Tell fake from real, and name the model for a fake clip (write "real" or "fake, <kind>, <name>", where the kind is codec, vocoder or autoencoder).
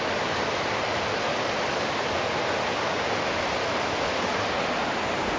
real